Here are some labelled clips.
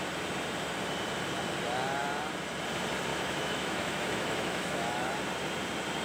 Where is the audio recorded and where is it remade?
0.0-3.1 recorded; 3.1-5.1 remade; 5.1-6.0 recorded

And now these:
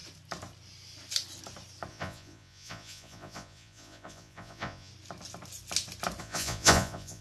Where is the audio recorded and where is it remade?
0.0-1.9 recorded; 1.9-4.9 remade; 4.9-6.2 recorded; 6.2-7.2 remade

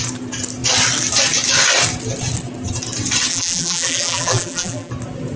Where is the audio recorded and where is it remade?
0.0-3.3 recorded; 3.3-4.9 remade; 4.9-5.4 recorded

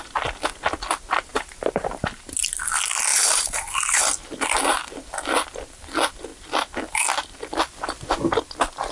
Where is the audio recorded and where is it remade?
0.0-1.3 recorded; 1.3-2.0 remade; 2.0-3.1 recorded; 3.1-4.0 remade; 4.0-8.9 recorded

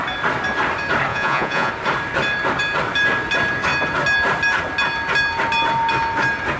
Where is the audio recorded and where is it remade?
0.0-1.1 recorded; 1.1-1.7 remade; 1.7-6.6 recorded